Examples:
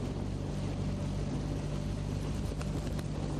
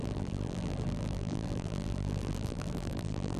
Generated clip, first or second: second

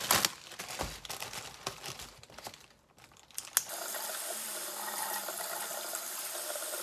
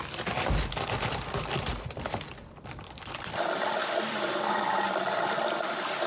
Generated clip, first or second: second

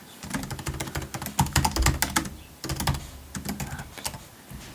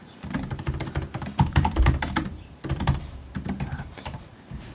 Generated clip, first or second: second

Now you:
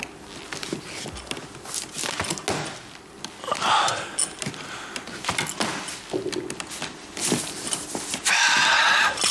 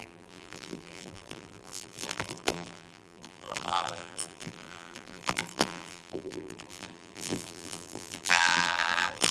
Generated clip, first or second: second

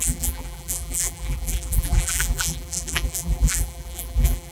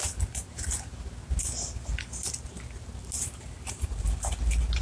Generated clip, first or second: first